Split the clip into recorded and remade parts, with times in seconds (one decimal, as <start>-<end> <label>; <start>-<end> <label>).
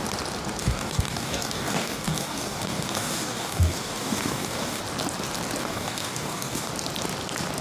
0.0-0.6 recorded; 0.6-4.8 remade; 4.8-5.6 recorded; 5.6-6.7 remade; 6.7-7.6 recorded